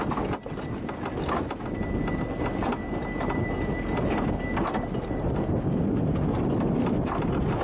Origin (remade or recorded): recorded